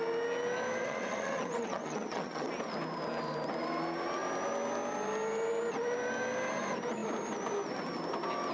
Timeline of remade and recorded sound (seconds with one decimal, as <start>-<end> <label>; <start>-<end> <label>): 0.0-0.8 recorded; 0.8-2.5 remade; 2.5-8.5 recorded